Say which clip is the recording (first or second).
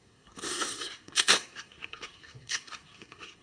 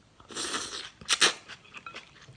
second